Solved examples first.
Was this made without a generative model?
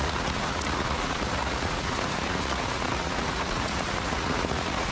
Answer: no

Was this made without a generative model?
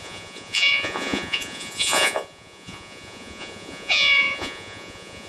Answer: no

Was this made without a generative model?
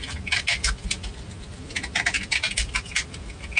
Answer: yes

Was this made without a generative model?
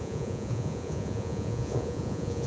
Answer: no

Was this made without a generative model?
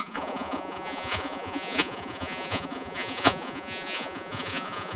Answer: no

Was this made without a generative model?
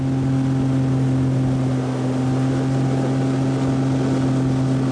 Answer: yes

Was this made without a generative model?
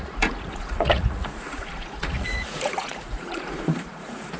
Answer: no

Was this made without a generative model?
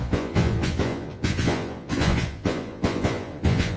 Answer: no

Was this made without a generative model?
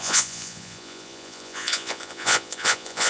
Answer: no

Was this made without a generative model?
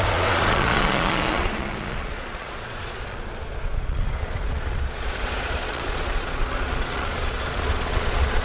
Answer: no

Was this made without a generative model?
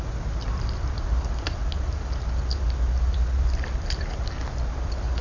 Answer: yes